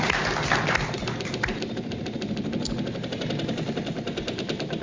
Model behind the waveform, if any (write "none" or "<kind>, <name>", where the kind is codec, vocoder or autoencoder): none